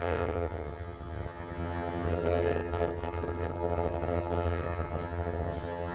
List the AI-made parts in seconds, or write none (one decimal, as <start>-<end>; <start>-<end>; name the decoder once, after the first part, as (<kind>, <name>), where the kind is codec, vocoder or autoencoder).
0.0-5.9 (vocoder, HiFi-GAN)